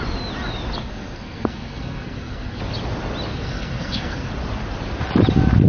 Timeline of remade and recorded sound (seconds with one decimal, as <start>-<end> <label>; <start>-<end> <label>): 0.0-0.8 recorded; 0.8-2.6 remade; 2.6-3.3 recorded; 3.3-4.3 remade; 4.3-5.7 recorded